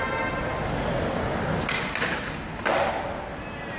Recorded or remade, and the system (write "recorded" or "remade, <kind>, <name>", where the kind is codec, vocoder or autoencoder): recorded